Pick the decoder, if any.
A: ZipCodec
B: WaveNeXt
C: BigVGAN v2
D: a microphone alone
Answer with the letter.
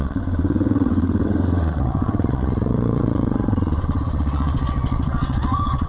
B